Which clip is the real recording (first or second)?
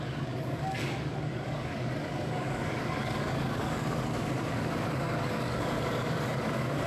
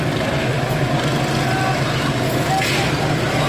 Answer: second